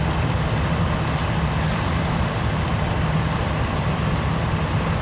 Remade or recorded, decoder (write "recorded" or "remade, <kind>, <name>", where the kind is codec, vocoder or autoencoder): recorded